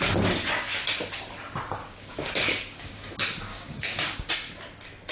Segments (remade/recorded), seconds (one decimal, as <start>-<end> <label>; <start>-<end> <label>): 0.0-1.8 recorded; 1.8-3.1 remade; 3.1-3.5 recorded; 3.5-4.3 remade; 4.3-5.1 recorded